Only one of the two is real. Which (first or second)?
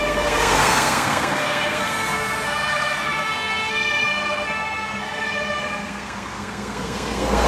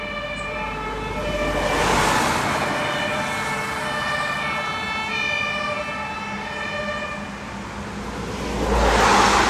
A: second